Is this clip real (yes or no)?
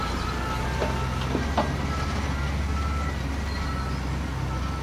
yes